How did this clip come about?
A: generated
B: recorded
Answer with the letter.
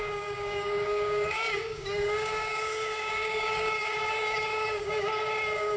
A